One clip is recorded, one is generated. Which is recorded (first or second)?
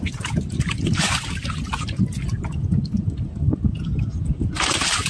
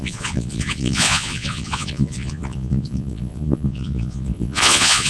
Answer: first